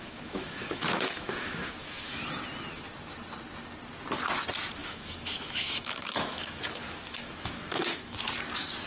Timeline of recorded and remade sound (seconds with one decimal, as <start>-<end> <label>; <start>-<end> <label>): 0.0-2.3 remade; 2.3-4.8 recorded; 4.8-8.2 remade; 8.2-8.9 recorded